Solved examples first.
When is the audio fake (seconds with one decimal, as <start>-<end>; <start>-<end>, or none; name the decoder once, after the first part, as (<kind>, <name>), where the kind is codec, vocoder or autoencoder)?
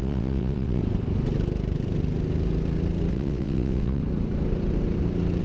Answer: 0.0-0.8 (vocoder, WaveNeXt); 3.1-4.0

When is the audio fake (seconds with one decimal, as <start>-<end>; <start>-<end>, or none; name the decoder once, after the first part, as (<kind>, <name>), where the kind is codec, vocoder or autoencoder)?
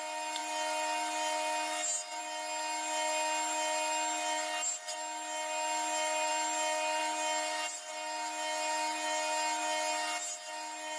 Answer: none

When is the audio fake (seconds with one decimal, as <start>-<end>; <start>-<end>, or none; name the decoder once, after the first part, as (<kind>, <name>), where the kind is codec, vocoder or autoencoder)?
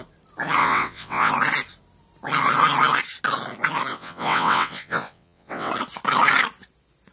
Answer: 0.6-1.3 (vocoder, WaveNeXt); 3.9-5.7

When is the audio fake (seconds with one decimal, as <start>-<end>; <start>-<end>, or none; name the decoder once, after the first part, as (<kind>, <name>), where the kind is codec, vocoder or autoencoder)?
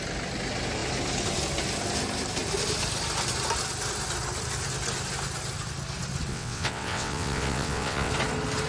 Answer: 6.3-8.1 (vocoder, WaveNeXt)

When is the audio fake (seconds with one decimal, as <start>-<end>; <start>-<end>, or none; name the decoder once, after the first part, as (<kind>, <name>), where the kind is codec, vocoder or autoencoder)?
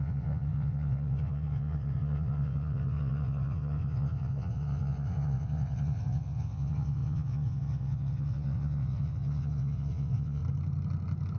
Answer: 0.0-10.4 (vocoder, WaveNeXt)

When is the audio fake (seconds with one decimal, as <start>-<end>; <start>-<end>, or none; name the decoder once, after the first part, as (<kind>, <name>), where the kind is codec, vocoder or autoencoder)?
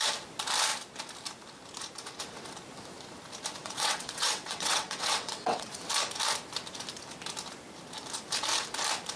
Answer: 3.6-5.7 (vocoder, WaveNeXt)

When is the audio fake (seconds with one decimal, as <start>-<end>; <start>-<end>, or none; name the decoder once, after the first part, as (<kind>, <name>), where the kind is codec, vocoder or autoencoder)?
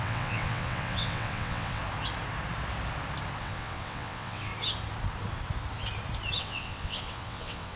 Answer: 0.0-1.8 (vocoder, WaveNeXt); 3.4-4.5; 6.4-7.8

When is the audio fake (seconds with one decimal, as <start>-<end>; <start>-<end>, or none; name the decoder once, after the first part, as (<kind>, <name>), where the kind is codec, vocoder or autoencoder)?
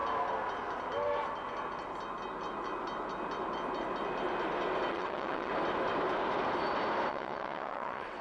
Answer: 4.9-5.5 (vocoder, WaveNeXt); 7.1-8.2